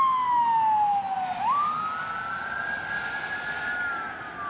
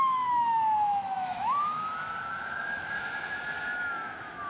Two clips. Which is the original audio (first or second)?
first